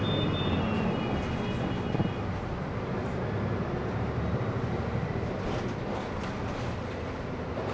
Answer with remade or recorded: recorded